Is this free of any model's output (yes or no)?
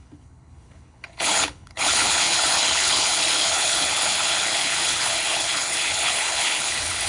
no